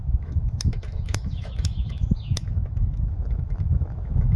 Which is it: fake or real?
fake